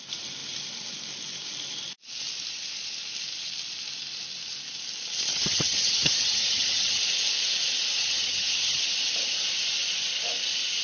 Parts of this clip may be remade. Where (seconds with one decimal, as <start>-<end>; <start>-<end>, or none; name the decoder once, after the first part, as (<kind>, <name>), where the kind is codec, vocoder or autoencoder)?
5.3-7.0 (vocoder, HiFi-GAN); 8.0-8.8

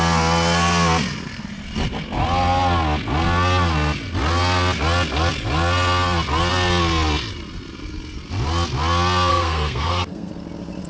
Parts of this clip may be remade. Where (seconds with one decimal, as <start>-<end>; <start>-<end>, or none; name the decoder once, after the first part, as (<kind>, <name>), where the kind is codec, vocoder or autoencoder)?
9.3-10.3 (codec, SNAC)